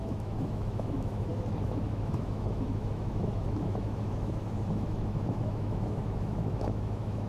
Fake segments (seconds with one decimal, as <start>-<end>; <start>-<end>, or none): 0.0-7.3